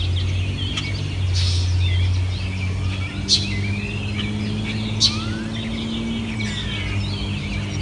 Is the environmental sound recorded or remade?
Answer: recorded